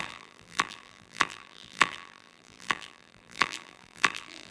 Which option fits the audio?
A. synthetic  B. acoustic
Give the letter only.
A